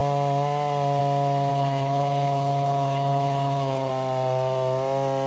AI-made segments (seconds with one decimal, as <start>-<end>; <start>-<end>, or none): 1.5-3.9